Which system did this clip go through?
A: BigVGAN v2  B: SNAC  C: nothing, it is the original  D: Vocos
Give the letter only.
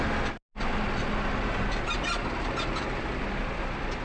C